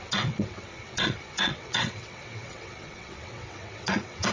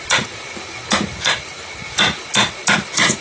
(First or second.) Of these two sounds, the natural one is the second